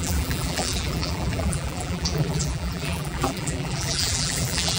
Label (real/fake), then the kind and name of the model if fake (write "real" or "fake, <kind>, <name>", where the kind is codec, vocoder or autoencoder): fake, vocoder, BigVGAN v2